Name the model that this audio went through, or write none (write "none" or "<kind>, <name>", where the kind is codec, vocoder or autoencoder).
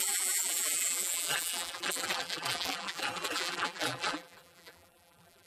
vocoder, BigVGAN v2